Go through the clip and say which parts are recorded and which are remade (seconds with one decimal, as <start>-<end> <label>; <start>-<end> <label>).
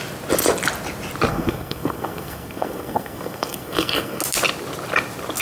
0.0-1.3 recorded; 1.3-4.2 remade; 4.2-5.4 recorded